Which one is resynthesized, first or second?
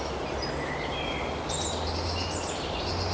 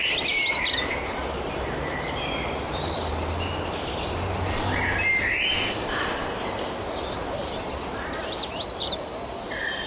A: second